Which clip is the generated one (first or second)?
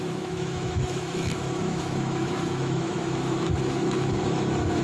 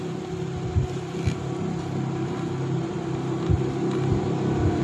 first